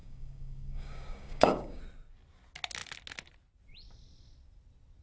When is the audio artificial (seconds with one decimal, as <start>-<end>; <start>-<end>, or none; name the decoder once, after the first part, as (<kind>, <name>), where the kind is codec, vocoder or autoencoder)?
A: 0.0-1.8 (codec, DAC)